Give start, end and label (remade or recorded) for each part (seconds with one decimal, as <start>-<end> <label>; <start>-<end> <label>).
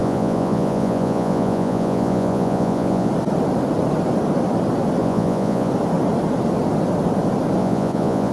0.0-3.1 remade; 3.1-5.0 recorded; 5.0-5.7 remade; 5.7-7.6 recorded; 7.6-8.3 remade